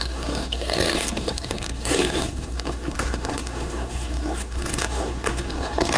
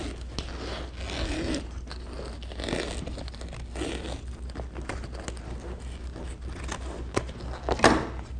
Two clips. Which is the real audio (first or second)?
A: second